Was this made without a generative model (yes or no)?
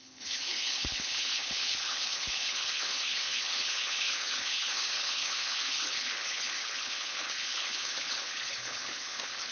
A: no